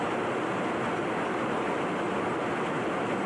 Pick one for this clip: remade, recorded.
recorded